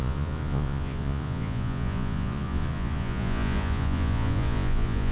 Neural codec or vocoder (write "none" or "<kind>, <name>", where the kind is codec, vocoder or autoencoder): vocoder, Vocos